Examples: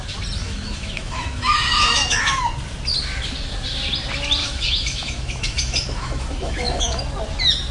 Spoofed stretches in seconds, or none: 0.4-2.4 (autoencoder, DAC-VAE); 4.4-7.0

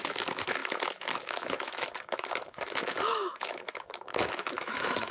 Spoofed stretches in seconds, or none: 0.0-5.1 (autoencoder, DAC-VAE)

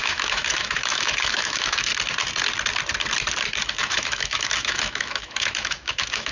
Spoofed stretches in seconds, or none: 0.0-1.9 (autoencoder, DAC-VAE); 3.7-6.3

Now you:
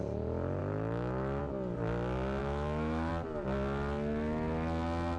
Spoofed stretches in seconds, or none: 0.6-1.4 (autoencoder, DAC-VAE); 2.4-3.1

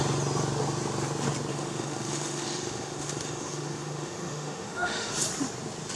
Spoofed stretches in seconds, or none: 1.5-5.1 (autoencoder, DAC-VAE)

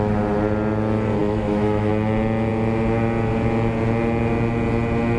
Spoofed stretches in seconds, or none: 1.2-1.9 (autoencoder, DAC-VAE)